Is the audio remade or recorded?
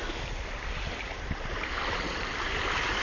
recorded